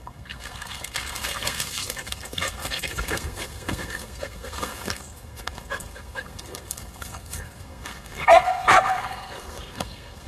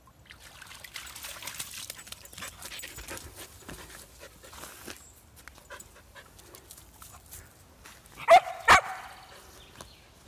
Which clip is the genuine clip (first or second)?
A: second